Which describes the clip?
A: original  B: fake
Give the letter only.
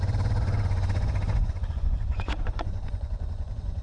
B